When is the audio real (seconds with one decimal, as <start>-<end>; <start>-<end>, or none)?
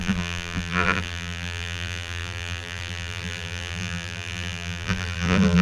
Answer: none